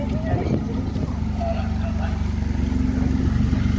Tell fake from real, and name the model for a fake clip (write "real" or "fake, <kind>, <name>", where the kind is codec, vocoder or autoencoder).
real